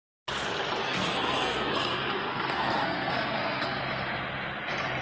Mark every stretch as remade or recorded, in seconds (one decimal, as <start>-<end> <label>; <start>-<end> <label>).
0.0-0.8 recorded; 0.8-3.8 remade; 3.8-5.0 recorded